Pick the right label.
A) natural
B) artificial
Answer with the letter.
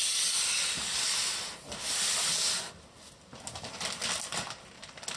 A